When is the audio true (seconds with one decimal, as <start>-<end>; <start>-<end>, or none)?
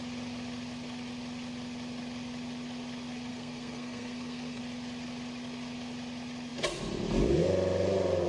0.0-3.3; 4.6-8.3